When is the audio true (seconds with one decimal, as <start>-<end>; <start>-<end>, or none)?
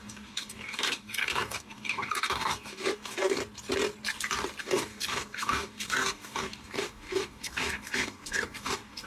3.4-4.6